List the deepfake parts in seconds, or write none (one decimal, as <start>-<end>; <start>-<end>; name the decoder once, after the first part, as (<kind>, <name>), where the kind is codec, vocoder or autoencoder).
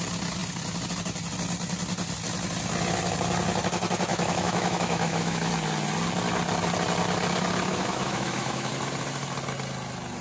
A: 4.1-5.5 (autoencoder, DAC-VAE); 7.7-8.7